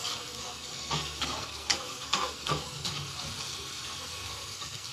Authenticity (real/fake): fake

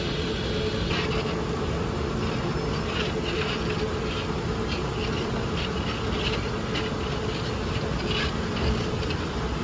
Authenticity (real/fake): real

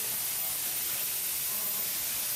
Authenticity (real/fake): real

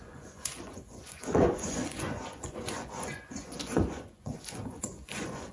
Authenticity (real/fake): fake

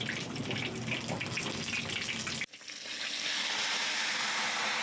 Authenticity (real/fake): real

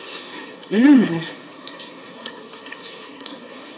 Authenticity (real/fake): fake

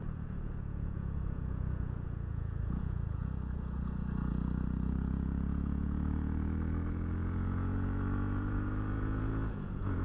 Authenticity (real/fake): fake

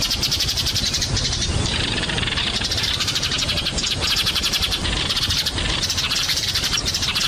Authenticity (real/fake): fake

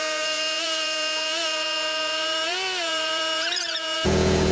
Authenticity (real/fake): fake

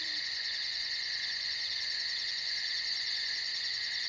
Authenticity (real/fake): fake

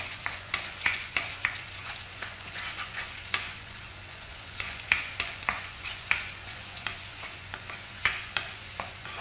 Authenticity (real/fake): fake